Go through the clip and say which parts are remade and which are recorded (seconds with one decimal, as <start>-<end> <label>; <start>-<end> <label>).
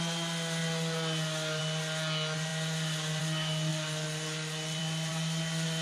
0.0-3.7 recorded; 3.7-5.1 remade; 5.1-5.8 recorded